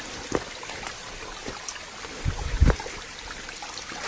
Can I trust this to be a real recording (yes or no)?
yes